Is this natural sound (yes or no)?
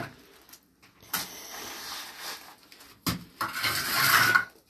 yes